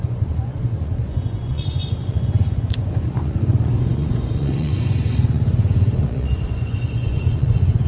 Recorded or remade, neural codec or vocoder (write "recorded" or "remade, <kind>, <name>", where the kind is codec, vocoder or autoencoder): remade, vocoder, Vocos